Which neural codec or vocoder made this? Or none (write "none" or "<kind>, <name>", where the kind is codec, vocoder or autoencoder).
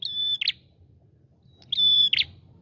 none